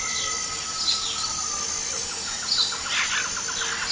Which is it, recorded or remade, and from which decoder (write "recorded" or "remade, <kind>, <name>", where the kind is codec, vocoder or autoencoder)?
recorded